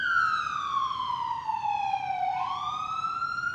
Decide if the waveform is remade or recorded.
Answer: recorded